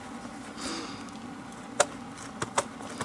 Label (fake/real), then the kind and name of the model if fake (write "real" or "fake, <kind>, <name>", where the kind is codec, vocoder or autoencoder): real